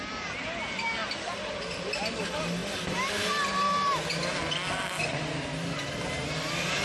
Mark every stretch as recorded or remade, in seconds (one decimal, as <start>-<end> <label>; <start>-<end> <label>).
0.0-1.0 recorded; 1.0-1.6 remade; 1.6-6.8 recorded